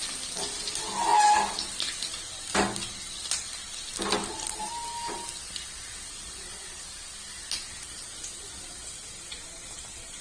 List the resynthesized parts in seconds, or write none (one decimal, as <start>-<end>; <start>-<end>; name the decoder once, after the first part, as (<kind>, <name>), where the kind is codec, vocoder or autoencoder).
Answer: 4.2-4.7 (vocoder, BigVGAN v2)